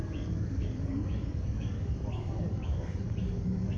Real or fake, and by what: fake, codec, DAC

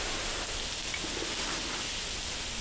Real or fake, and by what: real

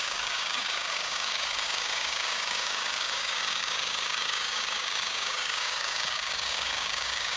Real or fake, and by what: fake, codec, DAC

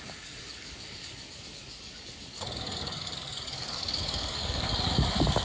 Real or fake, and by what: fake, codec, DAC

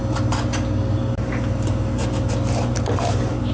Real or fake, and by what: real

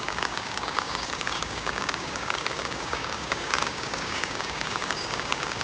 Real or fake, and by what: fake, codec, DAC